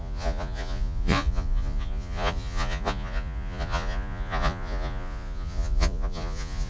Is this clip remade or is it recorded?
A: remade